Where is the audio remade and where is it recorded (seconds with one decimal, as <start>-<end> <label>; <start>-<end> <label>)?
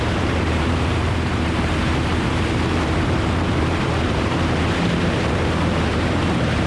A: 0.0-6.7 remade